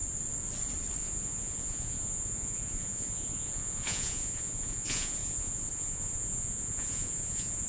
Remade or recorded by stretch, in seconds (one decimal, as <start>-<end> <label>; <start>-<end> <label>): 0.0-1.0 recorded; 1.0-7.7 remade